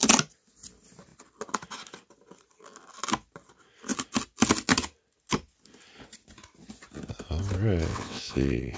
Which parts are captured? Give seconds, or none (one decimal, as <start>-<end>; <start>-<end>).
0.0-7.9